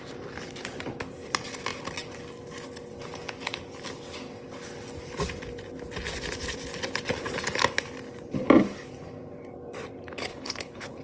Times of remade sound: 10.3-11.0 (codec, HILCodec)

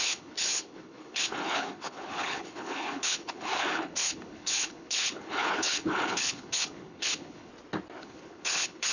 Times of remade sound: 0.0-7.5 (codec, HILCodec); 8.0-8.9